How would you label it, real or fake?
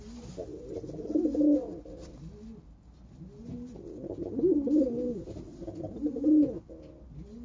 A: real